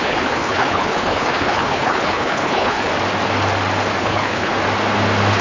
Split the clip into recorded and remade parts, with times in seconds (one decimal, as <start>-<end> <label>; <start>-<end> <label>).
0.0-2.9 remade; 2.9-4.0 recorded; 4.0-4.5 remade; 4.5-5.4 recorded